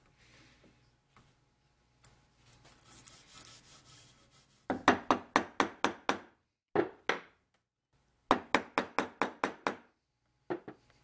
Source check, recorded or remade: recorded